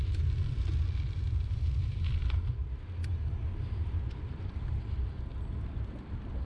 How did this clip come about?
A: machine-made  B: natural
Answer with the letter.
B